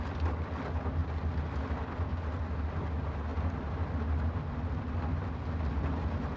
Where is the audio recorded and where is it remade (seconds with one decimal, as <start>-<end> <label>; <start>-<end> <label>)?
0.0-6.4 recorded